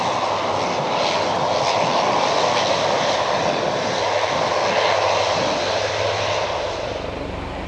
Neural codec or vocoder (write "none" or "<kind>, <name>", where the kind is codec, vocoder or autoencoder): none